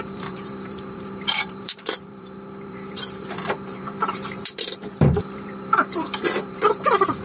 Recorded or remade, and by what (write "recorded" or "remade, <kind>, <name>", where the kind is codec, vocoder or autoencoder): remade, vocoder, BigVGAN v2